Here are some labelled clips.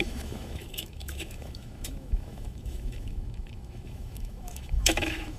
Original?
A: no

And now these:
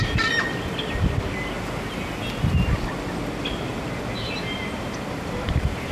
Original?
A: yes